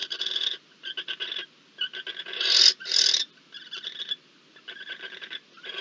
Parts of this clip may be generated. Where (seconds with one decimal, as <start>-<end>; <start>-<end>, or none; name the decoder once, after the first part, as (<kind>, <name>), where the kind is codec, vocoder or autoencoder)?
none